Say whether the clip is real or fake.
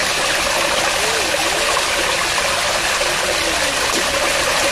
real